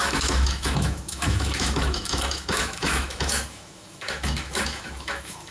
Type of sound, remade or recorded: remade